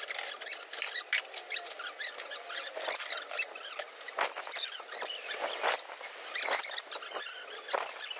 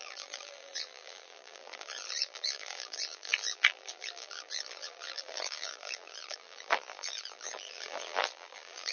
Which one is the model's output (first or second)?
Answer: second